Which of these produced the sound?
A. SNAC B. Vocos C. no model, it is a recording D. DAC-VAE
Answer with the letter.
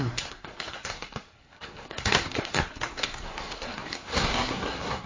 A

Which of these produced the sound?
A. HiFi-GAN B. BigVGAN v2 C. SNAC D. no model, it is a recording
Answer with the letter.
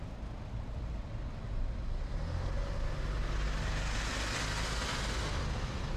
D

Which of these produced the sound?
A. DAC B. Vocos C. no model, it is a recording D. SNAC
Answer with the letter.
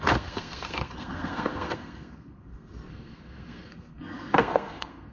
D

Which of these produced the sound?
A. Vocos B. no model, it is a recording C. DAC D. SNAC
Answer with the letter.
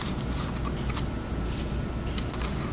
B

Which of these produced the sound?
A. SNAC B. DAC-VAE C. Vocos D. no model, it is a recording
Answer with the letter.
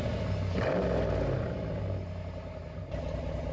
D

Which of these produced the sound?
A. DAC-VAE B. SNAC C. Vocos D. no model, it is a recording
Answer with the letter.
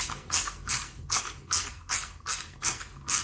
B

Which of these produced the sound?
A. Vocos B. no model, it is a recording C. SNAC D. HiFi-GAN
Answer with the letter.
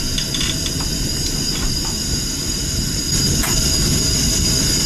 B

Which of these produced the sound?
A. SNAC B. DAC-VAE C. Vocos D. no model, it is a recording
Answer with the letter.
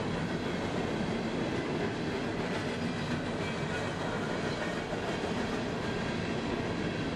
D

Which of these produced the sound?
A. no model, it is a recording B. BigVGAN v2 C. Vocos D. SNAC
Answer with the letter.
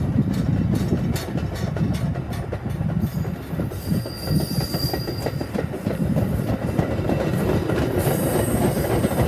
A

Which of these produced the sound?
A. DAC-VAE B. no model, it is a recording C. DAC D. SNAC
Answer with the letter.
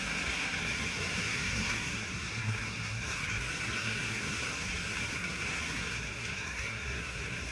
D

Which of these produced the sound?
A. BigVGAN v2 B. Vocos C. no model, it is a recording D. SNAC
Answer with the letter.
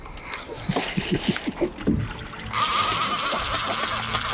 C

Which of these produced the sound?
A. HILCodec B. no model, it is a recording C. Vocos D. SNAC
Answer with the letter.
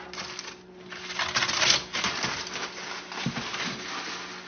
B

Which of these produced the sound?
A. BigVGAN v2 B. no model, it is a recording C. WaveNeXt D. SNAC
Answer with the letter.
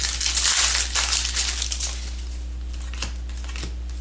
B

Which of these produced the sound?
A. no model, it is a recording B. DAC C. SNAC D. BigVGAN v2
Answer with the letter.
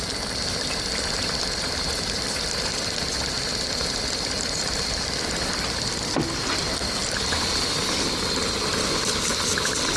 A